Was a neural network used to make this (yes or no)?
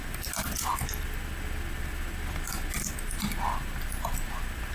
no